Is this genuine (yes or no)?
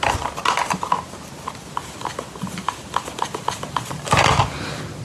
yes